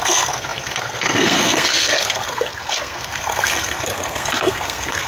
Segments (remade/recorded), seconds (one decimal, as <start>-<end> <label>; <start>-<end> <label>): 0.0-5.1 remade